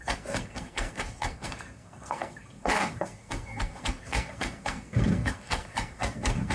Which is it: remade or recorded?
remade